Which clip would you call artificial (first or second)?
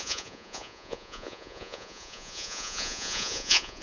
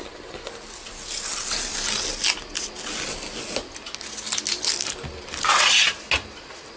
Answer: first